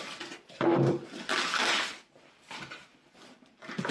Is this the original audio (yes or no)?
yes